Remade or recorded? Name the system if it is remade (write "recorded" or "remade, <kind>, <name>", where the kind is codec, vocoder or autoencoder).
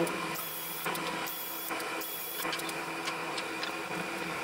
remade, vocoder, BigVGAN v2